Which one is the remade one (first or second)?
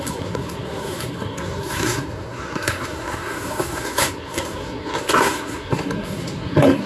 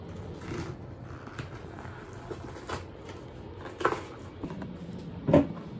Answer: first